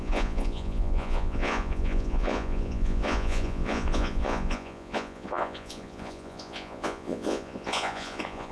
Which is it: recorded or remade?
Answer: remade